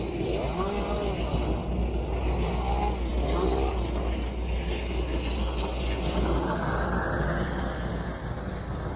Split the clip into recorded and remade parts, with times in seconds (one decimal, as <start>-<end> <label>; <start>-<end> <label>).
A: 0.0-9.0 recorded